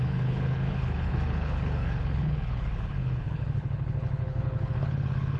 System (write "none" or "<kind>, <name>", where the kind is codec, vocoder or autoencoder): codec, HILCodec